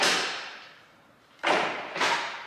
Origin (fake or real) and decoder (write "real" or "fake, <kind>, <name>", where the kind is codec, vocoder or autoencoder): fake, vocoder, BigVGAN v2